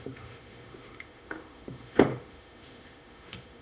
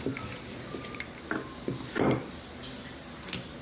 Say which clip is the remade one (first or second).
first